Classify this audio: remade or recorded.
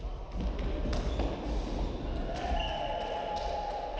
recorded